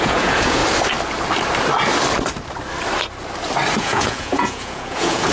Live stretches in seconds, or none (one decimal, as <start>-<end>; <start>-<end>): 0.6-3.8